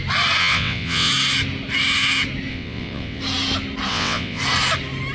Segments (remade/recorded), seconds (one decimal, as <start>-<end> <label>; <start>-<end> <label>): 0.0-0.4 recorded; 0.4-1.1 remade; 1.1-2.5 recorded; 2.5-3.2 remade; 3.2-3.9 recorded; 3.9-4.4 remade; 4.4-5.1 recorded